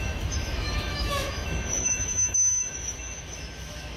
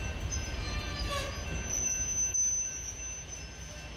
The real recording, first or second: second